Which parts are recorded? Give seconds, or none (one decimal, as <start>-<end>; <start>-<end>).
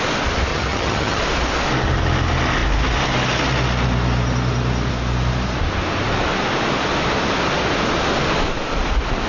0.0-0.5; 1.2-9.3